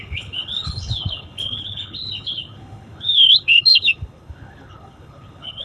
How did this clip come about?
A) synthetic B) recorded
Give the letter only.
A